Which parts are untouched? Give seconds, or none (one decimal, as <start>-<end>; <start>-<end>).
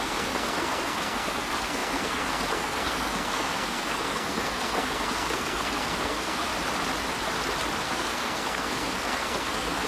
6.5-7.8